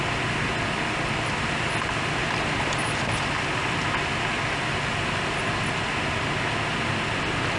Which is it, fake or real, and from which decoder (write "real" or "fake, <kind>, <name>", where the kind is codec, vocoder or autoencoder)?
real